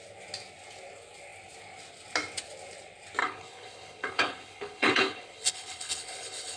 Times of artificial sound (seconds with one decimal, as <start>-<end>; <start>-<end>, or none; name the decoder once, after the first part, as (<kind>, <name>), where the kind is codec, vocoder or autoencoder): 3.2-6.6 (codec, HILCodec)